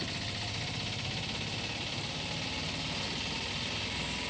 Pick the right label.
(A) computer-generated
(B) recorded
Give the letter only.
B